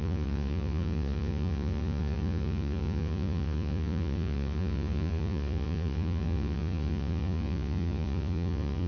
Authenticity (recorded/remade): remade